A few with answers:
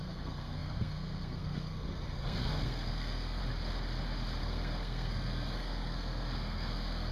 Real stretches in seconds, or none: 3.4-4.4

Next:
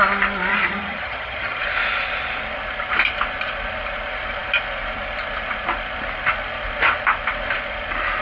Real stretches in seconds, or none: 0.0-0.5; 1.6-8.2

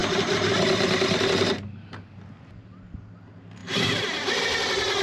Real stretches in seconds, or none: 0.0-3.6; 4.4-5.0

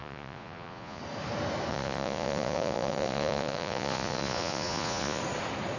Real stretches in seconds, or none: 1.0-1.7; 5.2-5.8

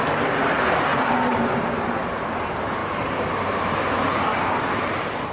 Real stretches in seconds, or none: 0.0-0.9; 1.5-4.3

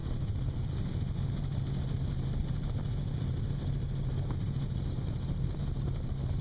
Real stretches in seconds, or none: 0.7-2.4